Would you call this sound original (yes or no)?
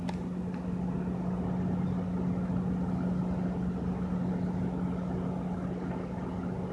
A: yes